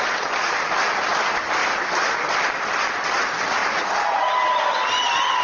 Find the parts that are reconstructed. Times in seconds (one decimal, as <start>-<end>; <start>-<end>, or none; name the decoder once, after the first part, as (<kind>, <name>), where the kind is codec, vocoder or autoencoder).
3.6-4.2 (vocoder, BigVGAN v2)